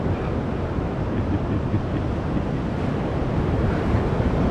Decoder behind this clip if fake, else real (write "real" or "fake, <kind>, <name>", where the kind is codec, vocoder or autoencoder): real